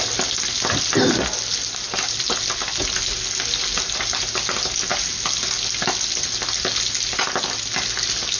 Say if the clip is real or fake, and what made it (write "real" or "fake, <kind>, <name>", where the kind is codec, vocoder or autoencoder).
real